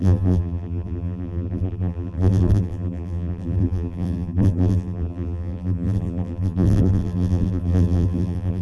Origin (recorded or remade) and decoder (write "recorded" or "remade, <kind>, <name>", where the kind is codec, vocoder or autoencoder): remade, vocoder, BigVGAN v2